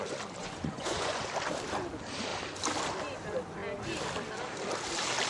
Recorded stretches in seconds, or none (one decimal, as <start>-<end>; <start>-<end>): 0.0-0.4; 1.2-5.3